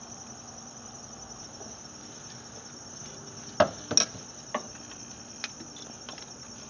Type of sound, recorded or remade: recorded